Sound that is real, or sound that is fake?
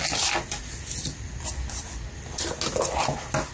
real